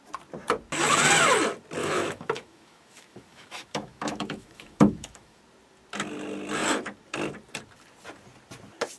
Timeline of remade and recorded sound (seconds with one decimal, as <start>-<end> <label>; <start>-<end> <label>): 0.0-1.8 recorded; 1.8-5.4 remade; 5.4-9.0 recorded